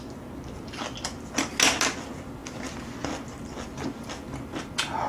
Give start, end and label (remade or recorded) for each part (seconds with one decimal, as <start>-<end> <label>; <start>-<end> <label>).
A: 0.0-5.1 recorded